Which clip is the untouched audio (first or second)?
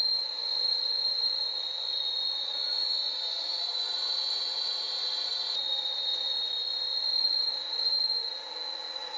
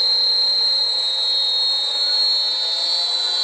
second